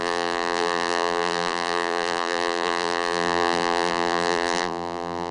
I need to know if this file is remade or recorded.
remade